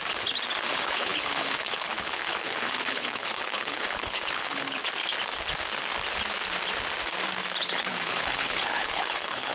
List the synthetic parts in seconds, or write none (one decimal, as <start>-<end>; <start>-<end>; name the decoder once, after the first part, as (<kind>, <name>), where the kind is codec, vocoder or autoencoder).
0.7-4.8 (codec, HILCodec); 7.6-9.5